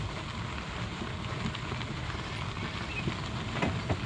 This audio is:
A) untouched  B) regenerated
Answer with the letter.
A